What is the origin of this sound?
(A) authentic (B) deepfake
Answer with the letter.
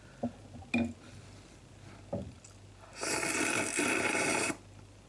A